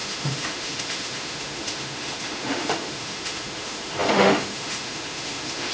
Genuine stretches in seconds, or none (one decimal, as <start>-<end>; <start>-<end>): none